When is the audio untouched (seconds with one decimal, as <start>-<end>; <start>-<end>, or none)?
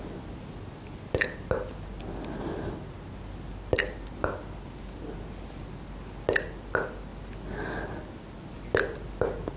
0.0-9.6